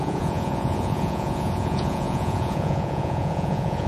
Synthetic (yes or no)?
yes